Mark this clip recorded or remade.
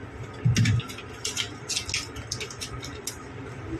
recorded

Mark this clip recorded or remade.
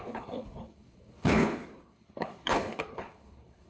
remade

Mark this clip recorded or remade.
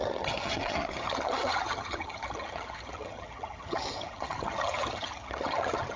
remade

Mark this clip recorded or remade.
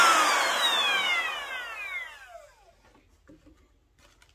recorded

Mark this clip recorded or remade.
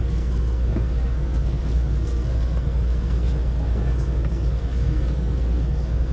remade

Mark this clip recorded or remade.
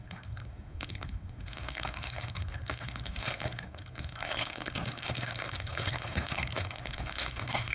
remade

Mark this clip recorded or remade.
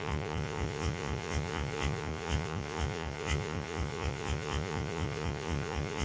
remade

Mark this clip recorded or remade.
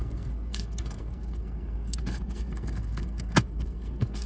remade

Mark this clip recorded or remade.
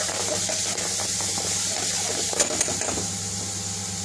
recorded